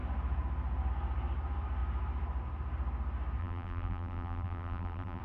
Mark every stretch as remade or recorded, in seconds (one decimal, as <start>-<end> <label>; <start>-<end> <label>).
0.0-3.4 recorded; 3.4-5.2 remade